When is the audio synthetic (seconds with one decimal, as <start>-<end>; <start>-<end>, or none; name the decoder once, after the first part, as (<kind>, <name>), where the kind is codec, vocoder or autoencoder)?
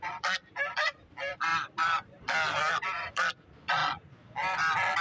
0.0-3.8 (vocoder, BigVGAN v2)